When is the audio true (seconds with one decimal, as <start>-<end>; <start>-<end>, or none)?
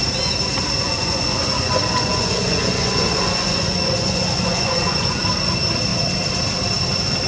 0.0-0.8; 5.2-7.3